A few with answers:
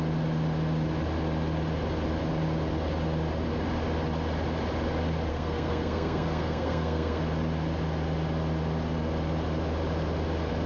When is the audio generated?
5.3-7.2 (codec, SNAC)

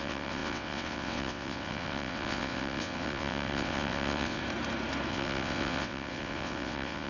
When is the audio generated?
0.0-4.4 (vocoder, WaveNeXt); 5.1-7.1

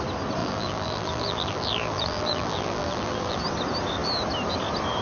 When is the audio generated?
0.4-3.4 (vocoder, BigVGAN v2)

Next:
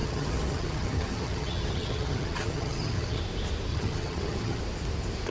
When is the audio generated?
0.0-3.2 (vocoder, HiFi-GAN); 3.7-4.6

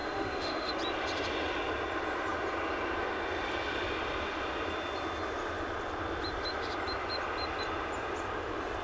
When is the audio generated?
0.0-0.7 (autoencoder, DAC-VAE)

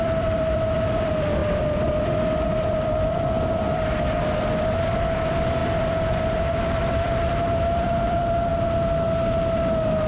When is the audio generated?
0.0-8.5 (vocoder, BigVGAN v2)

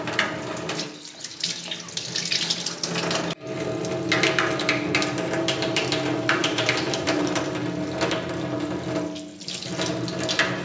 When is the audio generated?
6.4-7.4 (vocoder, BigVGAN v2)

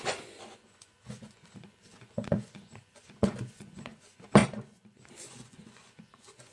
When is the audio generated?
0.0-6.5 (vocoder, Vocos)